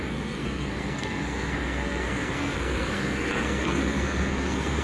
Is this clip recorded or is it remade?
remade